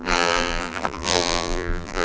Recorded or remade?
remade